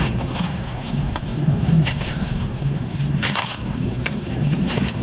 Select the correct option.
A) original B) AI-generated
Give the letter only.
B